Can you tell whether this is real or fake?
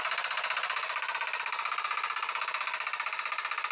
real